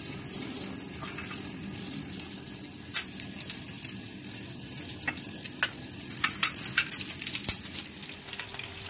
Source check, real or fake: real